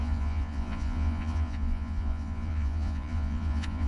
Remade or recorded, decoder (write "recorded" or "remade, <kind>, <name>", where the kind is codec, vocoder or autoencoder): remade, vocoder, Vocos